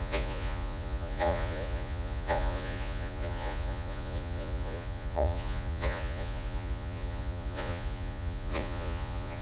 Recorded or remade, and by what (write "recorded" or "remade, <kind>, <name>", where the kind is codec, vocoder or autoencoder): remade, vocoder, Vocos